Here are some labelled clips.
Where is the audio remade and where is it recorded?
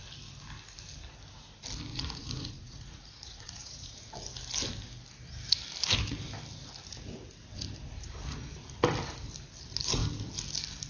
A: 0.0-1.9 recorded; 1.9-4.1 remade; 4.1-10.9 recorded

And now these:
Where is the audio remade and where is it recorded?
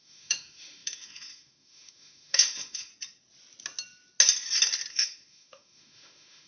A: 0.0-2.9 remade; 2.9-4.9 recorded; 4.9-6.5 remade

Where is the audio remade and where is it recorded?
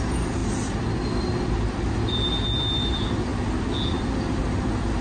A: 0.0-5.0 recorded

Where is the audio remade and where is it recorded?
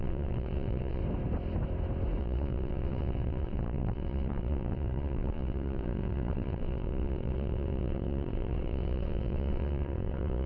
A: 0.0-1.0 remade; 1.0-2.2 recorded; 2.2-10.5 remade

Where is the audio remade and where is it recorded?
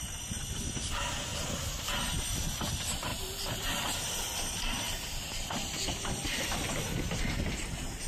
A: 0.0-8.1 recorded